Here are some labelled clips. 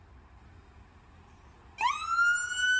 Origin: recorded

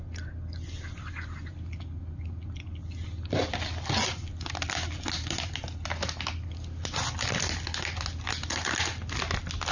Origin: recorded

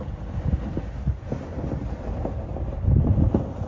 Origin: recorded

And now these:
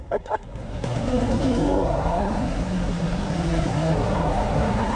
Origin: remade